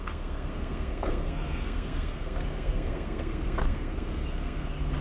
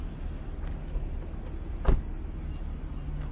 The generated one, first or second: first